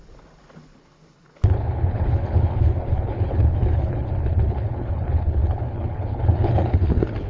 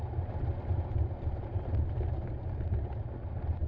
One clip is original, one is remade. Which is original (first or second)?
second